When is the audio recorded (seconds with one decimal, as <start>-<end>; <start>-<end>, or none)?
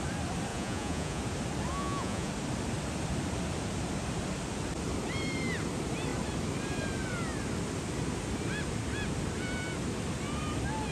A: 0.0-0.5; 1.2-1.7; 2.3-10.9